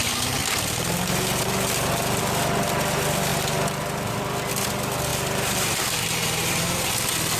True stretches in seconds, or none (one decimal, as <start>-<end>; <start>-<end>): 0.0-5.1; 6.9-7.4